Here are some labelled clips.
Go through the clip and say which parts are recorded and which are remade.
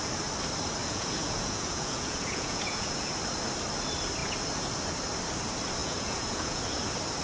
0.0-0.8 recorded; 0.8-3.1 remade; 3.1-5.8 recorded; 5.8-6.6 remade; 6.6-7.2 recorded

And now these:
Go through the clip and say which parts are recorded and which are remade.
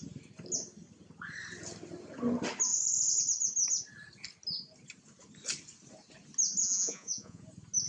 0.0-6.6 recorded; 6.6-7.4 remade; 7.4-7.9 recorded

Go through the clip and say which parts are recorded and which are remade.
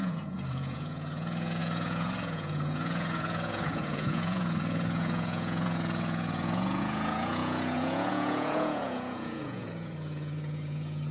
0.0-11.1 remade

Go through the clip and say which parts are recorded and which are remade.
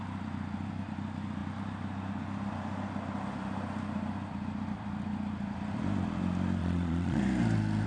0.0-6.6 recorded; 6.6-7.2 remade; 7.2-7.9 recorded